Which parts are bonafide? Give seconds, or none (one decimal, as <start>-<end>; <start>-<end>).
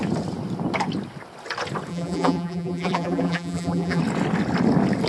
0.0-1.9; 4.0-5.1